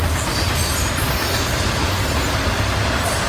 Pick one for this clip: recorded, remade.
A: recorded